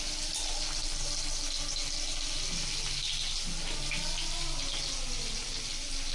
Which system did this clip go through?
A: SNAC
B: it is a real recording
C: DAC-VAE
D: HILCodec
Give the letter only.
B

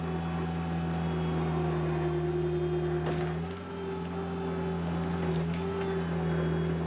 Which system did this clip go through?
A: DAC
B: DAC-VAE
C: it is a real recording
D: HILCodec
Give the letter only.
C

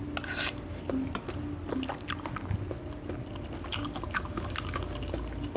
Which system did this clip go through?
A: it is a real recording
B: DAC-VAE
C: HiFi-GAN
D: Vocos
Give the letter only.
A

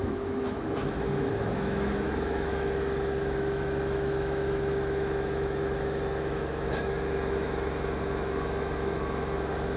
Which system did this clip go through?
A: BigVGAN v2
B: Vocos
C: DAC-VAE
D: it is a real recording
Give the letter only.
C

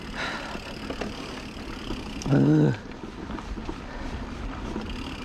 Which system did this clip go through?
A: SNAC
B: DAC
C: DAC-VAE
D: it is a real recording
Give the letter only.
D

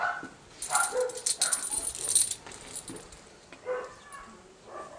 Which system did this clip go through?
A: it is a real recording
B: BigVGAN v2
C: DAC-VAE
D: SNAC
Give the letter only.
A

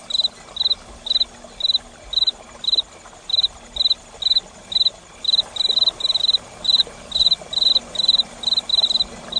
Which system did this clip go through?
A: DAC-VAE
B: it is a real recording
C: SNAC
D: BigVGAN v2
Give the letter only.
B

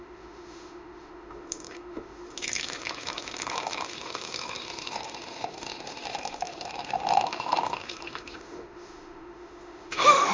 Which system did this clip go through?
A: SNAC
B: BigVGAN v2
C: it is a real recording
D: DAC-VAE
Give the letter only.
D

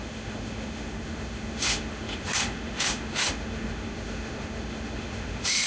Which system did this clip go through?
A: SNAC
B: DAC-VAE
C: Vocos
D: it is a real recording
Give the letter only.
B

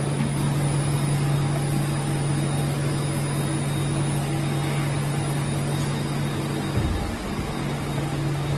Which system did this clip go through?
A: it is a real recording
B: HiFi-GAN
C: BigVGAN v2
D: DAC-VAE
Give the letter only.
A